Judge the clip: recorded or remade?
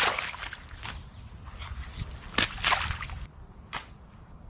recorded